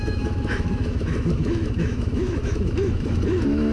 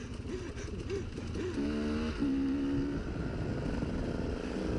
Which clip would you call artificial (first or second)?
first